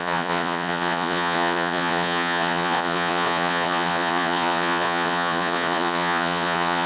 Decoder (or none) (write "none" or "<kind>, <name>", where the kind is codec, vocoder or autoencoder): vocoder, Vocos